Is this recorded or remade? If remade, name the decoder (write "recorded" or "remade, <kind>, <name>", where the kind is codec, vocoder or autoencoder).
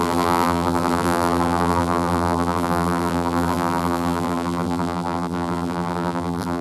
remade, vocoder, BigVGAN v2